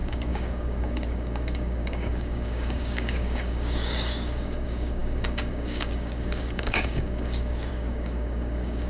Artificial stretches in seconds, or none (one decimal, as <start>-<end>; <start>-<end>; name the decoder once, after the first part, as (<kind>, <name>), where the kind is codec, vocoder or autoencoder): 0.0-8.9 (codec, DAC)